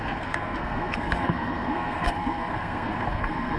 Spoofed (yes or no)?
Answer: yes